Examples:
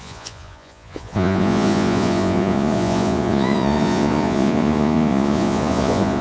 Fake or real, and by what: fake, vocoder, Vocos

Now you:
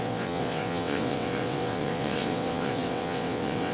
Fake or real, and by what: fake, vocoder, WaveNeXt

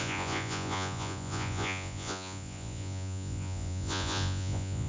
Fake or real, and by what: fake, vocoder, Vocos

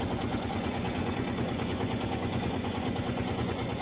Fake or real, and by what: fake, vocoder, Vocos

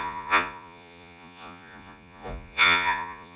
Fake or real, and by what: fake, vocoder, Vocos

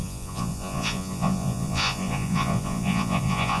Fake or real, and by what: fake, vocoder, Vocos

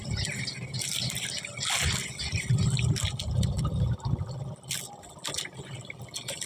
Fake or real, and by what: real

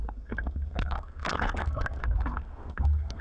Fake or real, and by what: fake, codec, SNAC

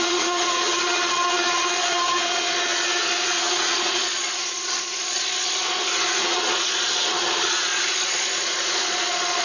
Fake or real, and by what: fake, vocoder, Vocos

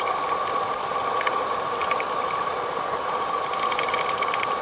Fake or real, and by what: real